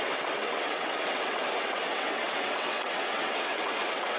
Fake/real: fake